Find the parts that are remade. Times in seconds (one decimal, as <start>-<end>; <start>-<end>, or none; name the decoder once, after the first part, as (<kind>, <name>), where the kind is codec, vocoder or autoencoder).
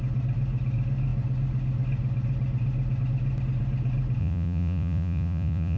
4.2-5.8 (vocoder, Vocos)